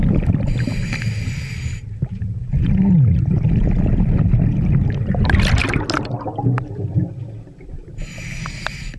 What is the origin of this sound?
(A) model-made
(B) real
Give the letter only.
B